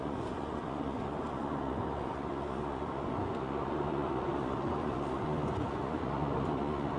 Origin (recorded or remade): remade